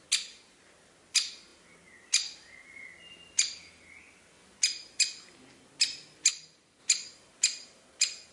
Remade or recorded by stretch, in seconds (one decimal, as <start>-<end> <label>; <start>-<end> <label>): 0.0-8.3 recorded